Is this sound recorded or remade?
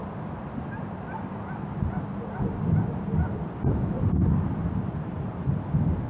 recorded